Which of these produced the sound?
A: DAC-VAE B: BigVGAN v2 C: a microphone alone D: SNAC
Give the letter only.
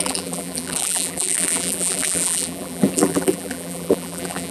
B